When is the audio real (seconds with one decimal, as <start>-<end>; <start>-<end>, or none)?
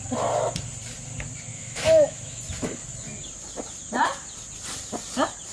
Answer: 0.0-1.5; 2.4-5.5